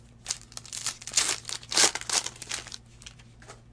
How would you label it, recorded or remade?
recorded